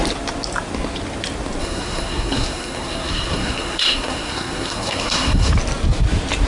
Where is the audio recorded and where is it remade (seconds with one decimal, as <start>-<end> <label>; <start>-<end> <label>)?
0.0-1.6 recorded; 1.6-5.5 remade; 5.5-6.5 recorded